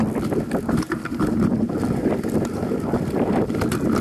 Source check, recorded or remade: recorded